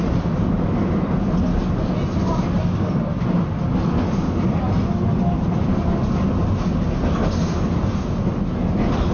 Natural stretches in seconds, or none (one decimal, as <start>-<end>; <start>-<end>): 0.0-9.1